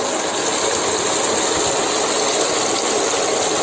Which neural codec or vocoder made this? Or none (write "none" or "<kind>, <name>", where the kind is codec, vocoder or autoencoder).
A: none